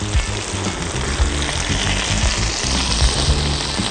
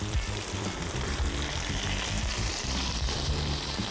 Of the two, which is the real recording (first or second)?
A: first